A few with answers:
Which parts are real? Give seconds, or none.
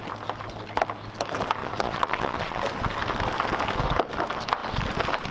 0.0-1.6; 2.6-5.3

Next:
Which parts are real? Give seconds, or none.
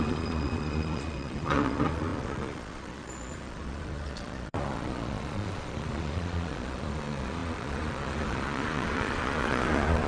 none